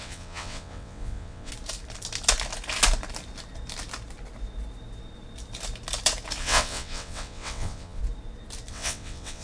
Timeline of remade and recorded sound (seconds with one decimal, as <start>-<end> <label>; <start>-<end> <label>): 0.0-1.5 remade; 1.5-6.4 recorded; 6.4-8.0 remade; 8.0-8.7 recorded; 8.7-9.4 remade